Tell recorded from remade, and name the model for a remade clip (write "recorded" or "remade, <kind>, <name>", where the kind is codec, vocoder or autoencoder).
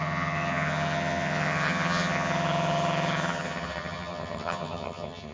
remade, vocoder, HiFi-GAN